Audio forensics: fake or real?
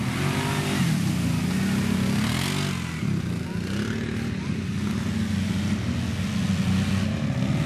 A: real